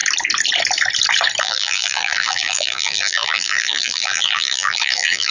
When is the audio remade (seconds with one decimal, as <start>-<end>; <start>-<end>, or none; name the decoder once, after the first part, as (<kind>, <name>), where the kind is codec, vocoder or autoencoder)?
1.4-5.3 (vocoder, BigVGAN v2)